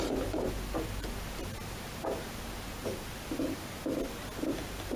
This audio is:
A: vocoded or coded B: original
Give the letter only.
B